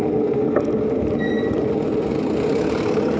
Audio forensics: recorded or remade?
recorded